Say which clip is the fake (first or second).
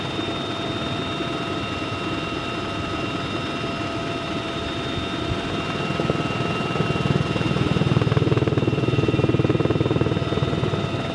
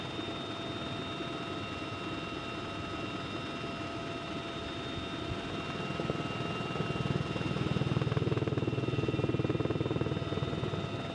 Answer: first